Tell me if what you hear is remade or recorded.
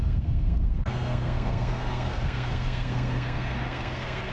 remade